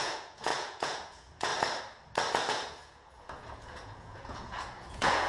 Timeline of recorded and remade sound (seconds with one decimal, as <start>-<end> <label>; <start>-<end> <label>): 0.0-1.5 remade; 1.5-2.5 recorded; 2.5-5.3 remade